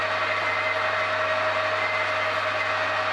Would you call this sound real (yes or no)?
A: yes